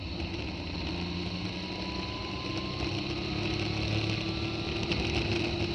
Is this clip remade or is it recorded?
recorded